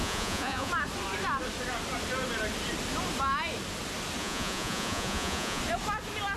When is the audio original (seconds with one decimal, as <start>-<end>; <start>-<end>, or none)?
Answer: 0.7-4.2; 5.6-6.4